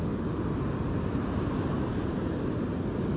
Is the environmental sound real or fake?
real